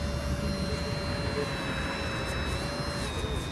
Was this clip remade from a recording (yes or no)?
no